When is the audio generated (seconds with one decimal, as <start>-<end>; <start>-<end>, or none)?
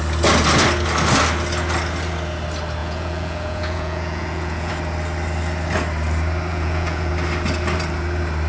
2.8-4.7; 6.5-7.1